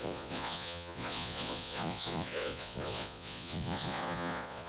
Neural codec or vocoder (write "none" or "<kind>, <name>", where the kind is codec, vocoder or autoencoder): vocoder, Vocos